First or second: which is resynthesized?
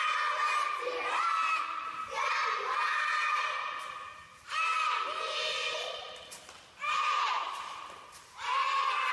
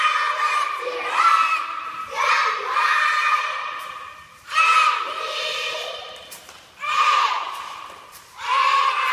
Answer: second